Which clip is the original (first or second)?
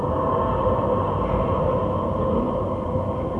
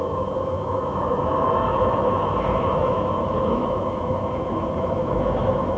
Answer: first